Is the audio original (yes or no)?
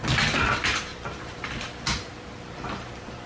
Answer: yes